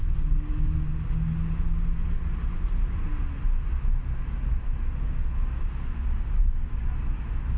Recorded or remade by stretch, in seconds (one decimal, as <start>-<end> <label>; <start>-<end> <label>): 0.0-7.6 recorded